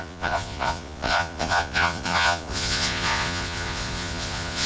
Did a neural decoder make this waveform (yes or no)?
yes